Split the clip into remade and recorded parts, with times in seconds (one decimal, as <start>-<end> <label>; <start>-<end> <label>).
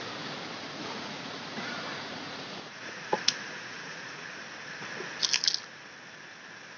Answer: 0.0-0.6 recorded; 0.6-4.4 remade; 4.4-6.8 recorded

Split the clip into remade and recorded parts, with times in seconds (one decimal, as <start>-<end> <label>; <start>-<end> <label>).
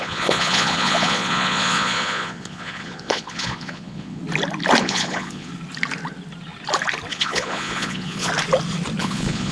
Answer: 0.0-4.2 remade; 4.2-4.8 recorded; 4.8-5.5 remade; 5.5-7.1 recorded; 7.1-8.3 remade; 8.3-9.0 recorded; 9.0-9.5 remade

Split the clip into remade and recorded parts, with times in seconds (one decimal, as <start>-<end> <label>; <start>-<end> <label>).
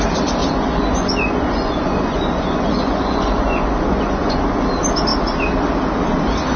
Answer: 0.0-0.4 recorded; 0.4-4.4 remade; 4.4-6.6 recorded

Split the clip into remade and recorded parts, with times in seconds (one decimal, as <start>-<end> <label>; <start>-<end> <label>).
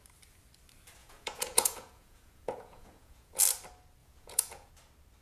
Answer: 0.0-1.0 recorded; 1.0-3.4 remade; 3.4-4.0 recorded; 4.0-4.7 remade; 4.7-5.2 recorded